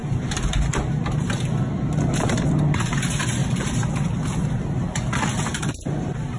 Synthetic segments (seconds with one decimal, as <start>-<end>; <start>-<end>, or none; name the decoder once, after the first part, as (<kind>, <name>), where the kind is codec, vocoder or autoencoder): 0.0-0.8 (vocoder, BigVGAN v2); 3.4-3.9; 5.5-6.4